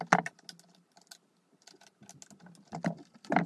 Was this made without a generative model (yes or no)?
yes